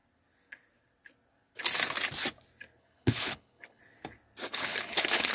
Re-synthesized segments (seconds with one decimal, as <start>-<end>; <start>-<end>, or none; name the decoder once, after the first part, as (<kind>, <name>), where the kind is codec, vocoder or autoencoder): 2.8-3.8 (codec, HILCodec); 4.5-5.3